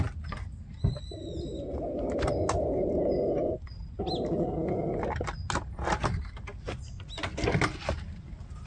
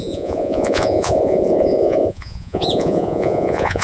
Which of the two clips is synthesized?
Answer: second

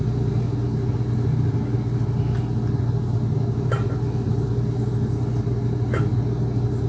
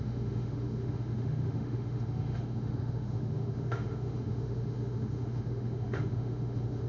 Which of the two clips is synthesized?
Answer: second